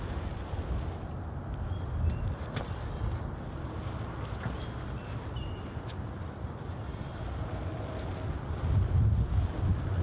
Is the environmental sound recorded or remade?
recorded